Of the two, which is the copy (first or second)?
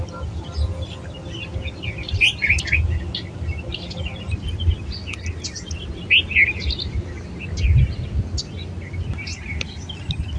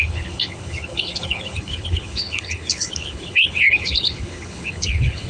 second